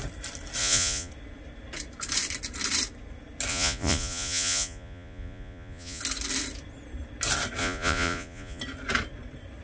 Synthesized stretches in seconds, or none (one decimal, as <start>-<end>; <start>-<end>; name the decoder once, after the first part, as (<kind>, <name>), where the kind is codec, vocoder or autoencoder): 0.6-1.1 (vocoder, Vocos); 3.5-6.0; 7.6-8.6